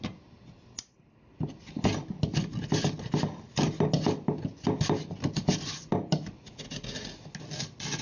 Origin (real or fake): real